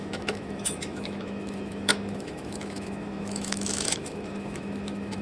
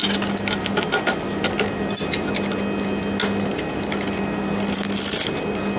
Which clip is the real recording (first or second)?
second